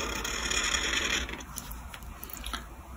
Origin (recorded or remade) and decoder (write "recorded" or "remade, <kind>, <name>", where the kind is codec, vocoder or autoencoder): recorded